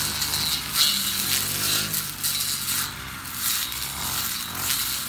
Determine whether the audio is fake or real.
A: real